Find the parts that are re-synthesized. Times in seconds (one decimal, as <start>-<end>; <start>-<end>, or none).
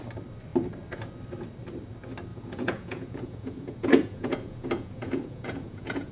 2.3-6.1